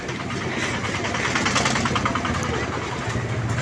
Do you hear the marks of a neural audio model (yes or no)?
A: no